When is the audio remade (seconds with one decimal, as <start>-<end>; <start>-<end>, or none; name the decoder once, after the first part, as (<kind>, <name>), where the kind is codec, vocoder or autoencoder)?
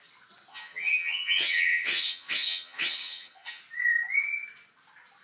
0.5-3.6 (vocoder, HiFi-GAN)